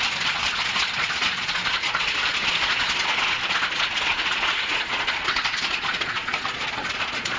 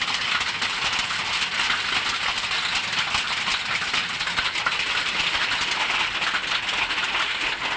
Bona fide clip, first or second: second